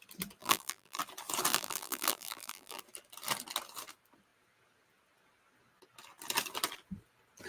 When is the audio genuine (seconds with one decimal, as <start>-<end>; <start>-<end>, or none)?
0.0-0.4; 1.0-1.5; 2.8-7.5